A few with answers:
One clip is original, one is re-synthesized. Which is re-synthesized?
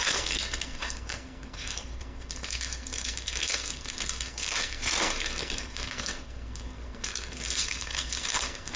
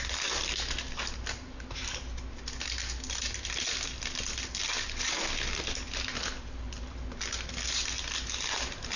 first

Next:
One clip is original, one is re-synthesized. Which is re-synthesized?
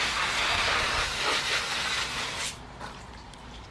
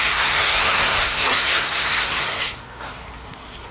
second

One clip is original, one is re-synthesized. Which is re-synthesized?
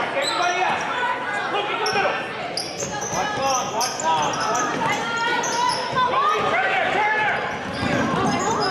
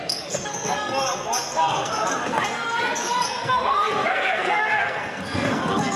second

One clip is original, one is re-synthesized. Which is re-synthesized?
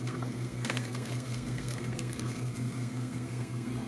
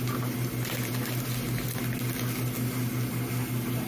first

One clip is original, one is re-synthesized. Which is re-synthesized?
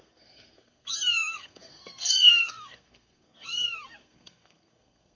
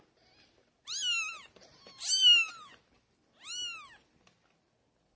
first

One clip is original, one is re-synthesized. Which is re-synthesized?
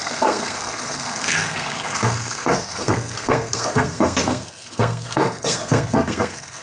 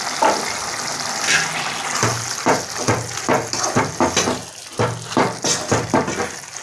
first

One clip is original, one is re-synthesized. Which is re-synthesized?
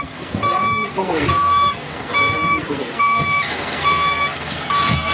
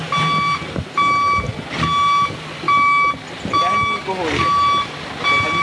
first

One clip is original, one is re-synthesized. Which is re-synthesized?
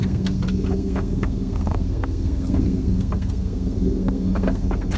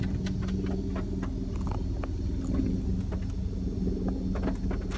first